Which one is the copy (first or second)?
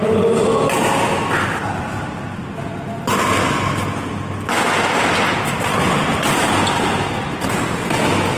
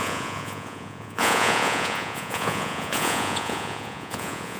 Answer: second